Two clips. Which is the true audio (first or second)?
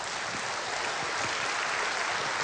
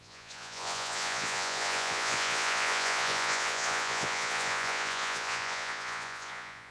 first